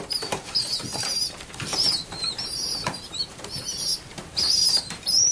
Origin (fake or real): fake